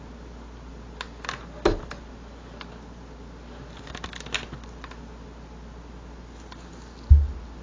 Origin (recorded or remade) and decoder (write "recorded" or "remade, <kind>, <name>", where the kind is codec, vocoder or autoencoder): recorded